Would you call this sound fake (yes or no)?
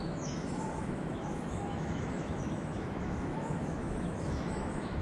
yes